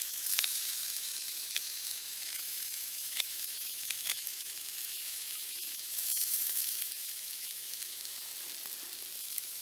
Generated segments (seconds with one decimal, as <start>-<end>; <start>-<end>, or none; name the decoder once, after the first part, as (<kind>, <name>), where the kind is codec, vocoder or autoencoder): 0.0-8.3 (autoencoder, DAC-VAE); 9.2-9.6